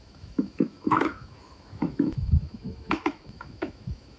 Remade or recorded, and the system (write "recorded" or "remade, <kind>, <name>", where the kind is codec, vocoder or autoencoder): remade, autoencoder, DAC-VAE